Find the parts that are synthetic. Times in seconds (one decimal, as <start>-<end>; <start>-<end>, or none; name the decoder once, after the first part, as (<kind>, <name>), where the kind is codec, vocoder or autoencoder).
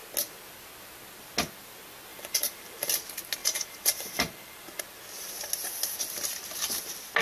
2.1-2.9 (vocoder, BigVGAN v2); 3.4-4.8